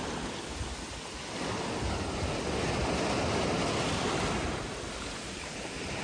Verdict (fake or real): real